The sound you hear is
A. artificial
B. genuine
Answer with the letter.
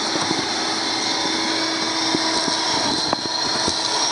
B